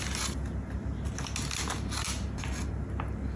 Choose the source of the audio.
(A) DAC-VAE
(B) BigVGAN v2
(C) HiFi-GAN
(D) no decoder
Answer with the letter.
D